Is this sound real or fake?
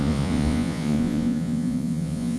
fake